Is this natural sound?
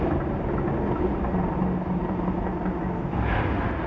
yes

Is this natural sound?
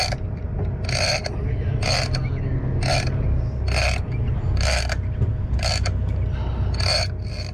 yes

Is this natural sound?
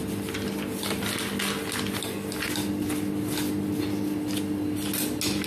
yes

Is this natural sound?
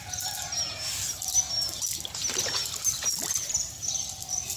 yes